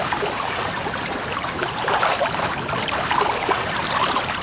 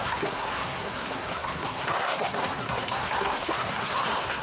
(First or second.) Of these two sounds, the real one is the first